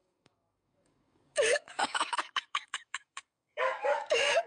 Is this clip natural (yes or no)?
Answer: no